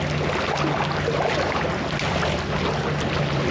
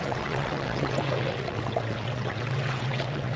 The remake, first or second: second